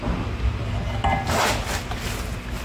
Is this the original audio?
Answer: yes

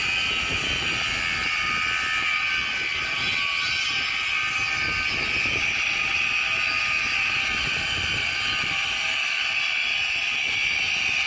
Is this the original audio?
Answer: yes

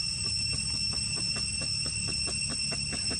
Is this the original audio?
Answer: yes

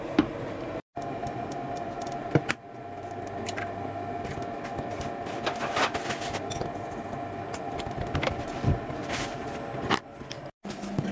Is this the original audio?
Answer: yes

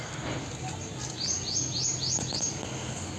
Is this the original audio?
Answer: yes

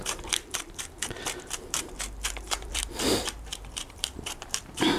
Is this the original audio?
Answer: no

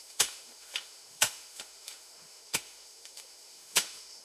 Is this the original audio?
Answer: no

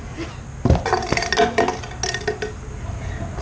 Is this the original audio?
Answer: yes